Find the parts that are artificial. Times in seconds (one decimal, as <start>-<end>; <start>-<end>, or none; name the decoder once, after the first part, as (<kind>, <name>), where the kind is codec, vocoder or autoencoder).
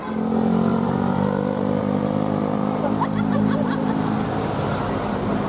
0.7-4.0 (vocoder, BigVGAN v2)